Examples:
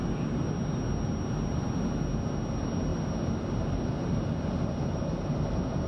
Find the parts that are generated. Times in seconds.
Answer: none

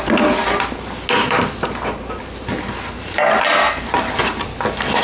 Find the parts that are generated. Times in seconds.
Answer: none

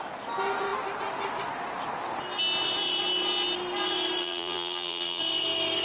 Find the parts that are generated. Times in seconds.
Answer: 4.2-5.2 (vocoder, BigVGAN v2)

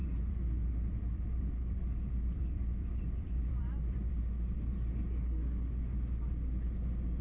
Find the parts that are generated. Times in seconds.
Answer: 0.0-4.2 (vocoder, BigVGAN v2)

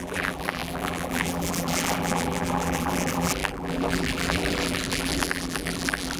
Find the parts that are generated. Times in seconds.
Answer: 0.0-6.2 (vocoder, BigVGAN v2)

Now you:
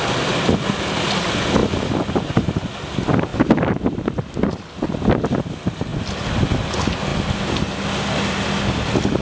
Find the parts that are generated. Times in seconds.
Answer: 5.9-6.5 (vocoder, BigVGAN v2)